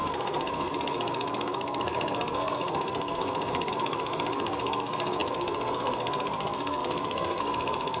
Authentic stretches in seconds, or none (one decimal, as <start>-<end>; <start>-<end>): none